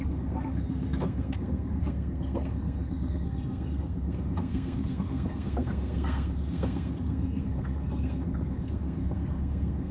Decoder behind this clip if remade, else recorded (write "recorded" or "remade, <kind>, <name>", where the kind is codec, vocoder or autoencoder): remade, codec, SNAC